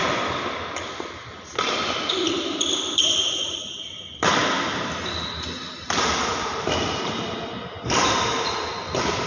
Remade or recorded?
recorded